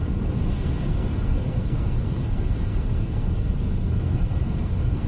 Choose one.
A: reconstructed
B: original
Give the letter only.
A